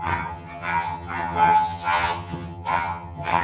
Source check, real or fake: fake